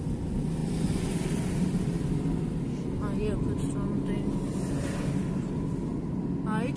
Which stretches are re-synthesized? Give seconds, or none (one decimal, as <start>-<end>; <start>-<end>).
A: none